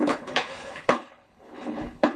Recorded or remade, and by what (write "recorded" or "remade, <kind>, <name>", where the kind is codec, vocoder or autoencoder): remade, codec, HILCodec